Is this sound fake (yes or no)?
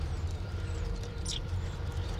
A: yes